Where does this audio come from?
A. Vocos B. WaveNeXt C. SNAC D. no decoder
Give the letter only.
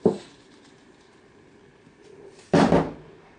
D